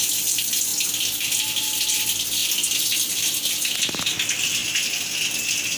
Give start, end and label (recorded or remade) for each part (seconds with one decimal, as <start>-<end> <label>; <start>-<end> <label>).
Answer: 0.0-5.8 recorded